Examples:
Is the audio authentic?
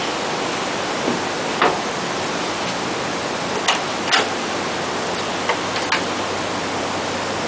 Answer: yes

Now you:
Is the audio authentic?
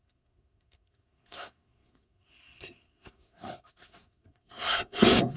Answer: no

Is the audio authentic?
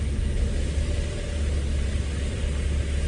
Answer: yes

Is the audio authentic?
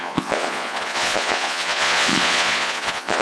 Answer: no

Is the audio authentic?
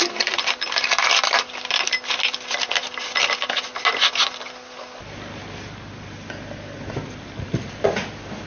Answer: yes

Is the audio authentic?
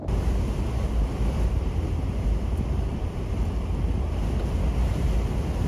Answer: yes